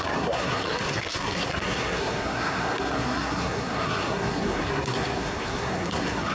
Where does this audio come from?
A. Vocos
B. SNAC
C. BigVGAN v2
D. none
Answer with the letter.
B